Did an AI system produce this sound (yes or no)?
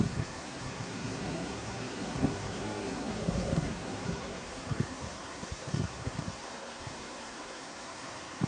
yes